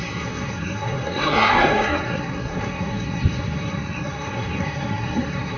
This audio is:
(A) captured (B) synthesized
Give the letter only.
B